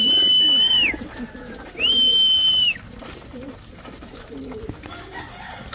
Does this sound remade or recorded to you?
recorded